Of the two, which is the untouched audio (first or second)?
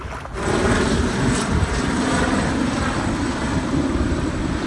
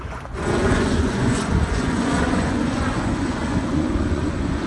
first